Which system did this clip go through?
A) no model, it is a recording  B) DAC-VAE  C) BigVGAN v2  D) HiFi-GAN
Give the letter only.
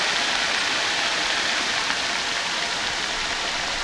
A